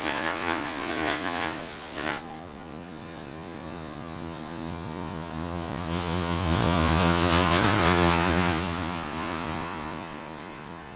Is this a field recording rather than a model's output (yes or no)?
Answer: no